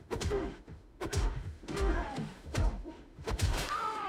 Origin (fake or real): fake